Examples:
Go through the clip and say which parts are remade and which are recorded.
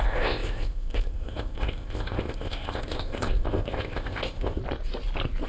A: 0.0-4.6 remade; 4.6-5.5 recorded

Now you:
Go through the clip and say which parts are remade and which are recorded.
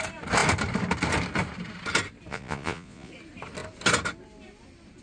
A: 0.0-2.3 recorded; 2.3-3.1 remade; 3.1-5.0 recorded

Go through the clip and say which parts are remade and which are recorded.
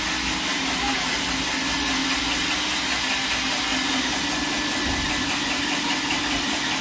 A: 0.0-0.5 recorded; 0.5-1.1 remade; 1.1-6.8 recorded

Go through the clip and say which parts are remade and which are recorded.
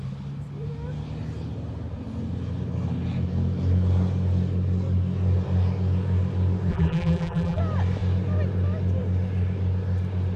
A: 0.0-6.7 recorded; 6.7-7.6 remade; 7.6-10.4 recorded